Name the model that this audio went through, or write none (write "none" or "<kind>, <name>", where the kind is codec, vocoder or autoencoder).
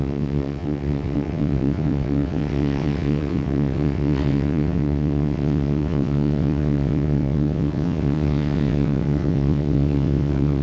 vocoder, WaveNeXt